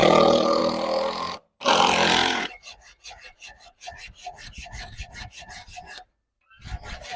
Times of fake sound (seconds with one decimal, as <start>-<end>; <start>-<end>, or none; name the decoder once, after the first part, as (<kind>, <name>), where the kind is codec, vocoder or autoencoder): 2.2-5.5 (vocoder, Vocos)